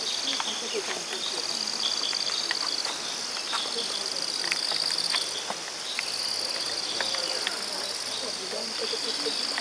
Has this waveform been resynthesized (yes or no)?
no